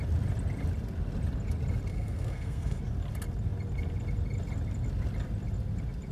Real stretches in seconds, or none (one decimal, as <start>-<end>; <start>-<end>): 0.0-1.9; 2.8-6.1